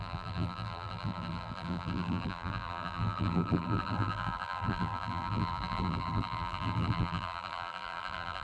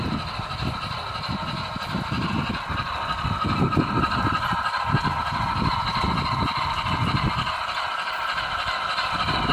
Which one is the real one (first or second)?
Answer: second